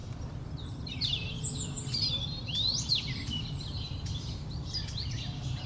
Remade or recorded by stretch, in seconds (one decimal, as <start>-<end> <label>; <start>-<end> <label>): 0.0-5.7 recorded